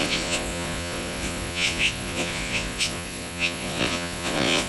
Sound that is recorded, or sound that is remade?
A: remade